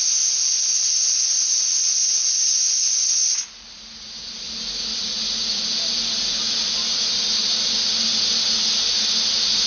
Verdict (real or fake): real